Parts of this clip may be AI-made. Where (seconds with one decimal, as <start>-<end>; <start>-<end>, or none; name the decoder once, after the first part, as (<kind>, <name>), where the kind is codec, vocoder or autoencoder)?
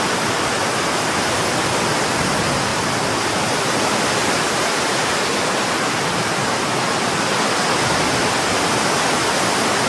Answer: 4.2-5.1 (vocoder, BigVGAN v2)